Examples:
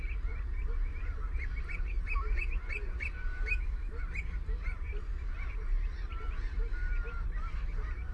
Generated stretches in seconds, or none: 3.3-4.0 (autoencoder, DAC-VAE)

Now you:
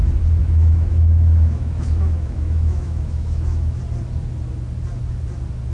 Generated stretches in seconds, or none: 0.4-3.8 (autoencoder, DAC-VAE)

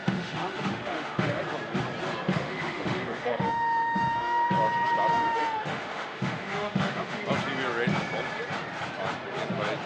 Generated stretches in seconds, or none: 0.0-1.4 (autoencoder, DAC-VAE); 2.3-4.5; 5.1-7.2

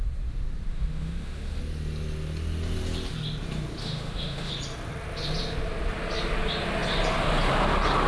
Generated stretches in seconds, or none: 0.7-1.6 (autoencoder, DAC-VAE); 3.8-4.5

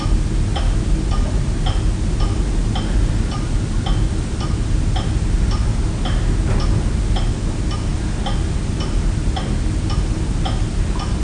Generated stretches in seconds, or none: none

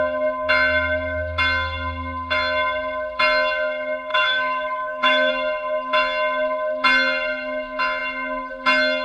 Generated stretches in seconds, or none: 4.1-5.3 (autoencoder, DAC-VAE)

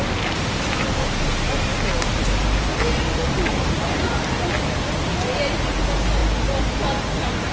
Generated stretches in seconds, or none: none

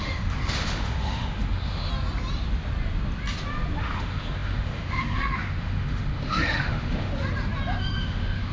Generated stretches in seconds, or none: 0.0-1.9 (autoencoder, DAC-VAE); 3.8-7.1; 7.8-8.5